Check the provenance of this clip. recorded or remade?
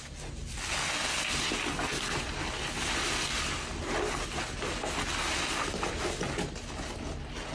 recorded